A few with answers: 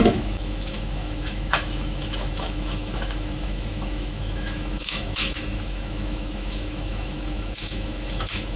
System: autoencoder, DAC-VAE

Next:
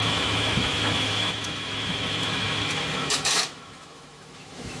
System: autoencoder, DAC-VAE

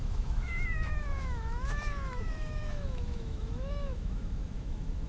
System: autoencoder, DAC-VAE